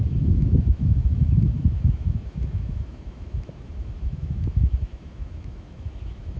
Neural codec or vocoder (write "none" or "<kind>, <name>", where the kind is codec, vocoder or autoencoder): autoencoder, DAC-VAE